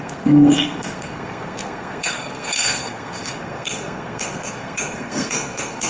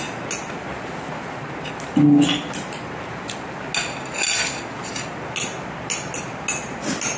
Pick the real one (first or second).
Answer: second